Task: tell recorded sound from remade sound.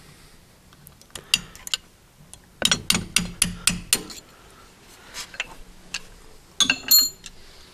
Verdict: recorded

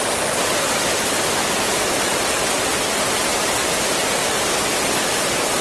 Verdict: recorded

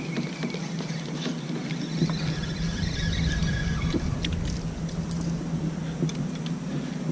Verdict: recorded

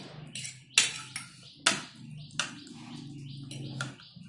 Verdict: recorded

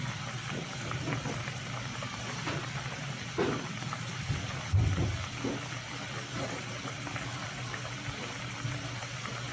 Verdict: remade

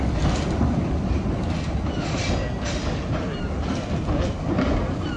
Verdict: recorded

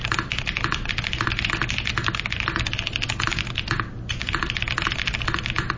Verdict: recorded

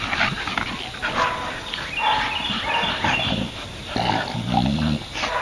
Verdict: recorded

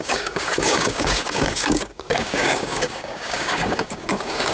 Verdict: remade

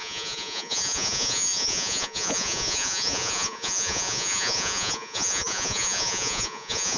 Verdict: remade